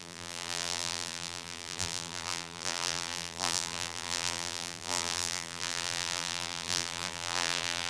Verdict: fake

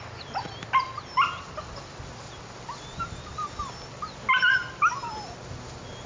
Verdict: real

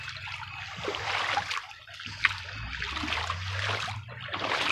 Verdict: real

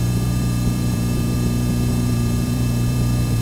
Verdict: fake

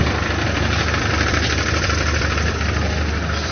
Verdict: fake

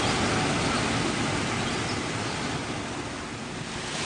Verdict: real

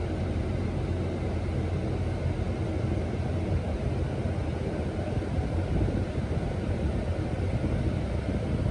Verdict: real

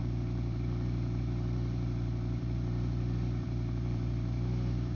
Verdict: fake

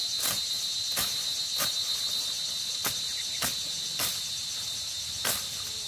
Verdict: real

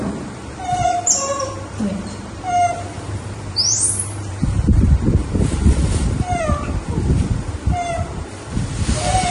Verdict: fake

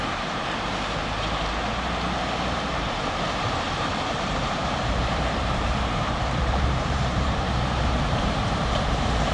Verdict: fake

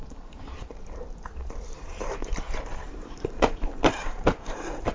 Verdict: fake